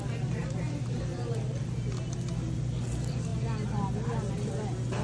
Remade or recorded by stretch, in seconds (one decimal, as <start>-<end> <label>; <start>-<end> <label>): 0.0-5.0 recorded